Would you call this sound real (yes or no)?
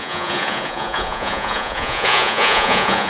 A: no